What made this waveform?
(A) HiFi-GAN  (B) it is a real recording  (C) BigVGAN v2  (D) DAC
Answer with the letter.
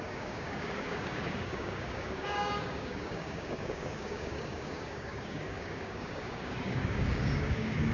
D